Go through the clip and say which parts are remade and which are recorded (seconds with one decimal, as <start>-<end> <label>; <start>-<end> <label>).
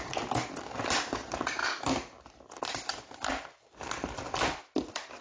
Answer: 0.0-5.2 recorded